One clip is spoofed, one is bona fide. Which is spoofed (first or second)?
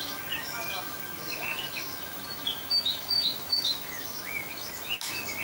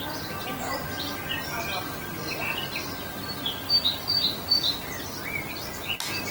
first